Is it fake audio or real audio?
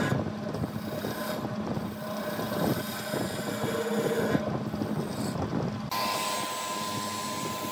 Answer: real